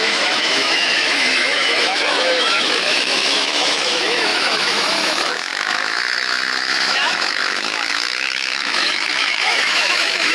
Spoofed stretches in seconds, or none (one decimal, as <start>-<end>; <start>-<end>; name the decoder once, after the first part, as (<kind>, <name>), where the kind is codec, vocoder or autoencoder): 0.0-10.3 (autoencoder, DAC-VAE)